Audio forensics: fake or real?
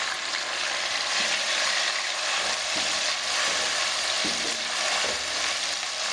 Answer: fake